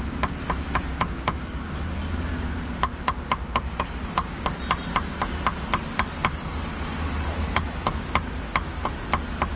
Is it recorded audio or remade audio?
recorded